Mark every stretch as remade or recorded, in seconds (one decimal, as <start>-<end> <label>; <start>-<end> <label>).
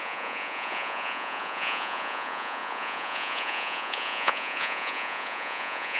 0.0-6.0 remade